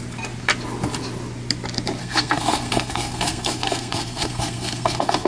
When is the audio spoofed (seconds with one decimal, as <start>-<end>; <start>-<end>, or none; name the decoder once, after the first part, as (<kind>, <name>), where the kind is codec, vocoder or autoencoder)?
2.0-5.3 (codec, SNAC)